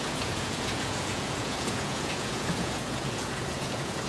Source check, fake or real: fake